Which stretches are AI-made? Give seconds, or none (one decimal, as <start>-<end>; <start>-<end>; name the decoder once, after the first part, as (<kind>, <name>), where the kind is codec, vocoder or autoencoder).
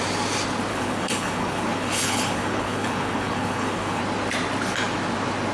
0.7-4.0 (codec, HILCodec)